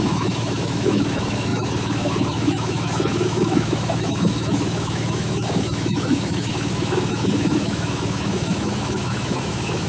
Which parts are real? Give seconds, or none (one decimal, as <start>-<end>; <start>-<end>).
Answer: none